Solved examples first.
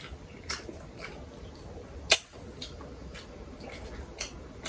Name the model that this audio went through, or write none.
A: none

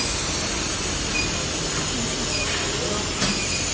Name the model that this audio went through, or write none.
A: none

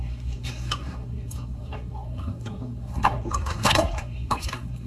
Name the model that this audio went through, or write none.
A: codec, SNAC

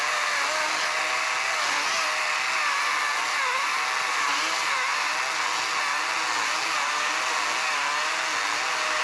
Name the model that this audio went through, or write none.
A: none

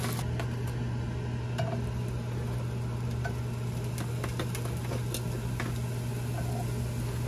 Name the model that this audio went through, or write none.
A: none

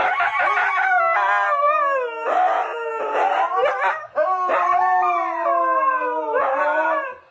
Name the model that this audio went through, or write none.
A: none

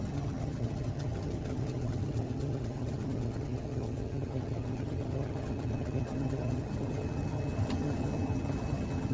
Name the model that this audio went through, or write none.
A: vocoder, HiFi-GAN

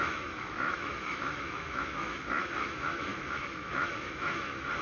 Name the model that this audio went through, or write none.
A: autoencoder, DAC-VAE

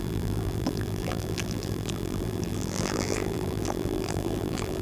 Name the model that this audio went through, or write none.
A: vocoder, BigVGAN v2